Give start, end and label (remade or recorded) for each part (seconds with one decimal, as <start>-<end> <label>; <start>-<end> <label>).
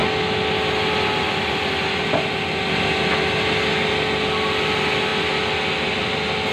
0.0-6.5 recorded